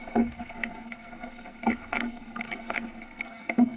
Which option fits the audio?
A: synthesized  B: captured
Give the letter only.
A